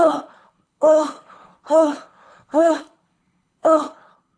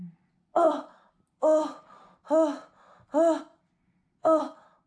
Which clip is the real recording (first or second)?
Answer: second